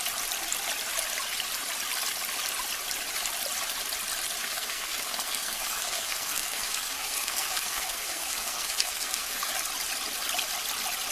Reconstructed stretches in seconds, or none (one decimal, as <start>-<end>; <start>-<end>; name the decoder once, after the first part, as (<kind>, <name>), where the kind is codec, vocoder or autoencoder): 4.4-9.5 (codec, SNAC)